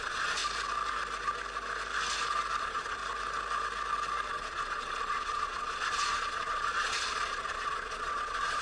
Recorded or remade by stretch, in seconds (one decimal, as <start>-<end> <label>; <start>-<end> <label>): 0.0-0.4 remade; 0.4-2.6 recorded; 2.6-3.0 remade; 3.0-4.3 recorded; 4.3-8.6 remade